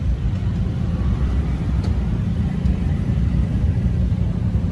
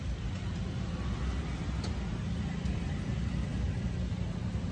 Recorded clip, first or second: second